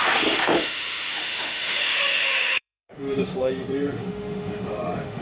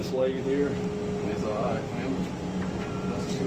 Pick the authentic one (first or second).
second